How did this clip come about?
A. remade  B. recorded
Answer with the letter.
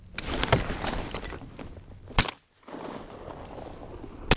B